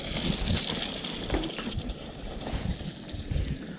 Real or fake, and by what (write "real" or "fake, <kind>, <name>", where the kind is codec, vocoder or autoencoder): real